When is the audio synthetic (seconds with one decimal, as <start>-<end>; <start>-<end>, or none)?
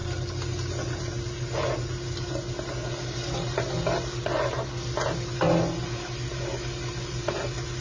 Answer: none